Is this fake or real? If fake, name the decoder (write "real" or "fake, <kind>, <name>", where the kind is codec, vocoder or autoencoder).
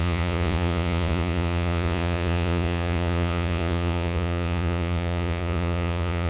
fake, vocoder, Vocos